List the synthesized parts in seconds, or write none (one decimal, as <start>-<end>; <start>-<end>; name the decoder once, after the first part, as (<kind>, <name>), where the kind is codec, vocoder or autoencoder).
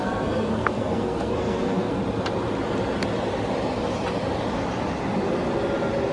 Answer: 0.0-2.0 (codec, SNAC)